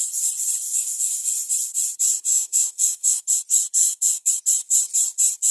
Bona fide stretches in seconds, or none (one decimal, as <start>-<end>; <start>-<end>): 0.0-0.7; 1.3-2.3; 3.4-3.8; 4.3-5.5